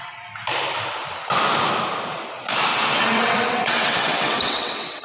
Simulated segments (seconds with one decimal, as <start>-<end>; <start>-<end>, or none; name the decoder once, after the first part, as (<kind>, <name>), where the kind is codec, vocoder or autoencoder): 2.7-5.0 (vocoder, WaveNeXt)